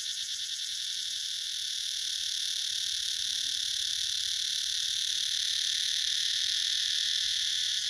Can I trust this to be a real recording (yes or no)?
no